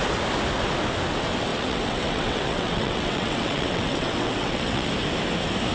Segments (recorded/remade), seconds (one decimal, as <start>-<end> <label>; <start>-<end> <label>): 0.0-1.5 recorded; 1.5-4.9 remade; 4.9-5.7 recorded

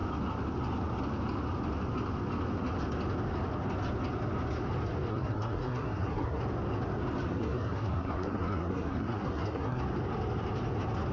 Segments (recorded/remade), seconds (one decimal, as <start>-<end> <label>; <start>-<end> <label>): 0.0-5.1 recorded; 5.1-6.4 remade; 6.4-7.3 recorded; 7.3-9.8 remade; 9.8-11.1 recorded

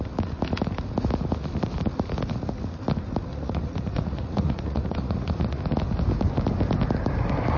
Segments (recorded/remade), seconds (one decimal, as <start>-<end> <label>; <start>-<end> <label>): 0.0-3.3 recorded; 3.3-5.6 remade; 5.6-7.6 recorded